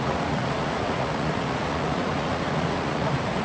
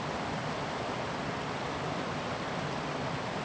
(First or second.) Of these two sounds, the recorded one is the second